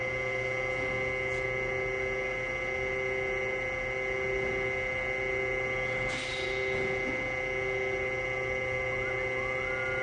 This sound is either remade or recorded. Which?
recorded